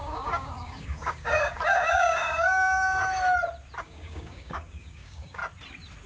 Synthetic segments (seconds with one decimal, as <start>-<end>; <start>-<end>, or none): 0.0-3.0; 3.8-5.4